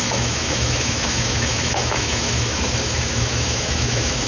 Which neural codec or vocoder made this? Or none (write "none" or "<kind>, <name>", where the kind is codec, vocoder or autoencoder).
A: autoencoder, DAC-VAE